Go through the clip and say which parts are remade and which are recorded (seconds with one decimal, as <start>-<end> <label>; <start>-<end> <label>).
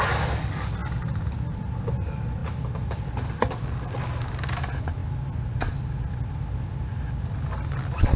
0.0-8.2 recorded